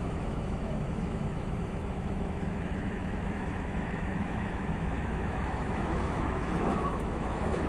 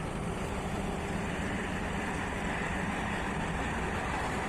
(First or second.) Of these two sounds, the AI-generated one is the first